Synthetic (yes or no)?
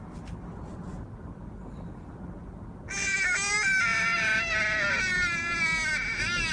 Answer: no